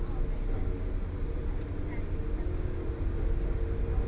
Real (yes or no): yes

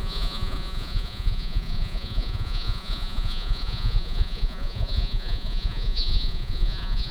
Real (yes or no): no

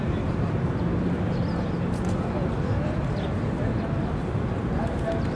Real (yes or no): yes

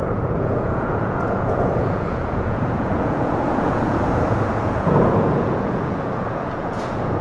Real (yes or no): no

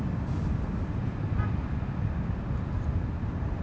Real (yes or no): yes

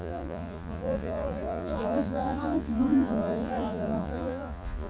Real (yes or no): no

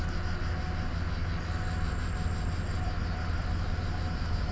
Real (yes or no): yes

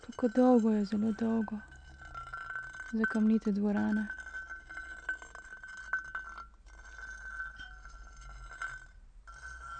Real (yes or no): yes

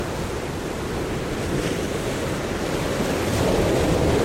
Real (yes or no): yes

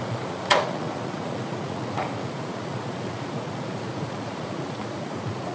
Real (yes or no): no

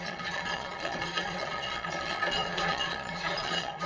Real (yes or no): no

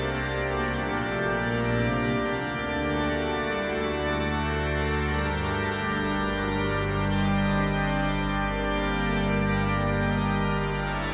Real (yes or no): yes